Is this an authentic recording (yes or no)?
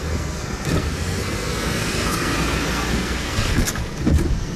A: no